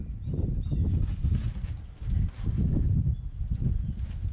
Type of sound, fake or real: real